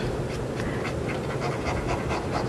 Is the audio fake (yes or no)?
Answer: no